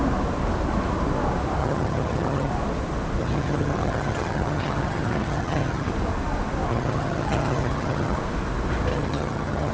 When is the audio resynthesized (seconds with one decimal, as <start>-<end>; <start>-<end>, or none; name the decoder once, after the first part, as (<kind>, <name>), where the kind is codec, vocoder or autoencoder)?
1.6-2.5 (vocoder, HiFi-GAN); 3.2-5.9; 6.7-8.2; 8.9-9.7